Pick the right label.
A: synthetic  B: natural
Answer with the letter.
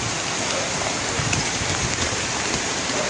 B